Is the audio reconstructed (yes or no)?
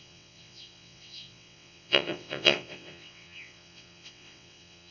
yes